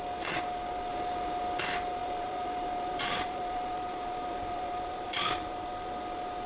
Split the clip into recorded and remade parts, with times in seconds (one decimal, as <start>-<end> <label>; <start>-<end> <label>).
0.0-2.0 recorded; 2.0-5.9 remade; 5.9-6.5 recorded